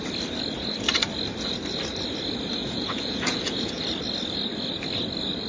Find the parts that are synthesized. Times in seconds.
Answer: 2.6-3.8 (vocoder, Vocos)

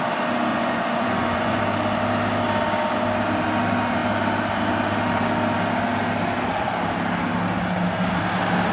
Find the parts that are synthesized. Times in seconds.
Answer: 0.5-1.6 (vocoder, Vocos)

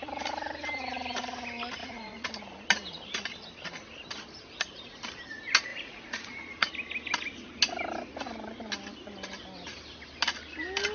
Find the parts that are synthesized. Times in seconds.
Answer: 1.8-2.3 (vocoder, Vocos); 5.7-6.7